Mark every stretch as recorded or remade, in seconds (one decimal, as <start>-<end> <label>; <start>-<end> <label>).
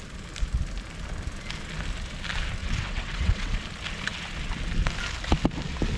0.0-2.6 recorded; 2.6-3.6 remade; 3.6-6.0 recorded